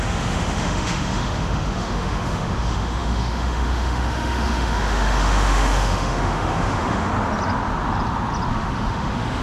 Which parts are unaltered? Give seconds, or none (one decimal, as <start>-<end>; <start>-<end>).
7.1-8.5